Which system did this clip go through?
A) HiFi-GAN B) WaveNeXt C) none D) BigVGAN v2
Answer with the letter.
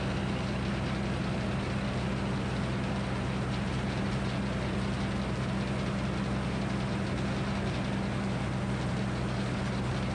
C